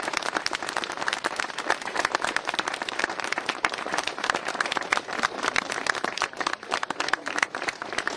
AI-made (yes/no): yes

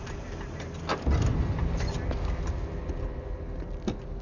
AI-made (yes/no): no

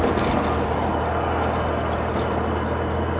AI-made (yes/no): no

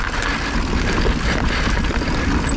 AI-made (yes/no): no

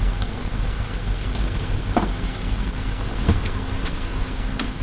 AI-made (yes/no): yes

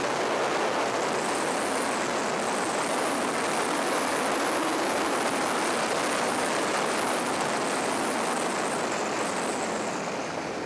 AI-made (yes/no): no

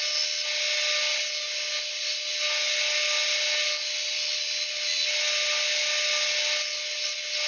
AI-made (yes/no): no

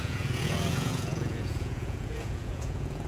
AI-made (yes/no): yes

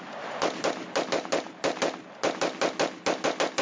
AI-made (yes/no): no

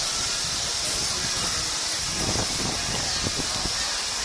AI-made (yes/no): no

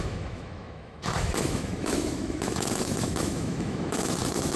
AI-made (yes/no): yes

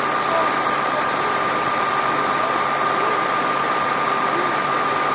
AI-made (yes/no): no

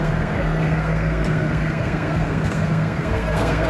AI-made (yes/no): yes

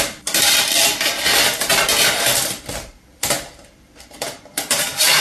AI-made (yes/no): yes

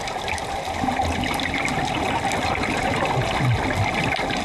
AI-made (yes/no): no